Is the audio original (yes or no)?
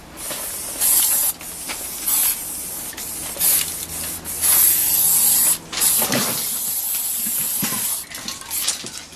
yes